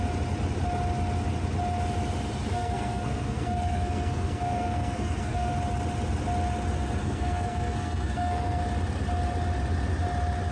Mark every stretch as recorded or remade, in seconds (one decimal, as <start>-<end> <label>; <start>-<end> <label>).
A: 0.0-2.5 recorded; 2.5-5.5 remade; 5.5-7.0 recorded; 7.0-8.6 remade; 8.6-10.5 recorded